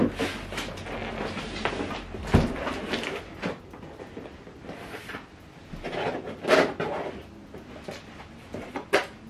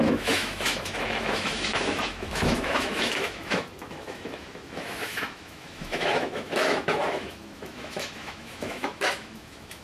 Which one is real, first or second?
first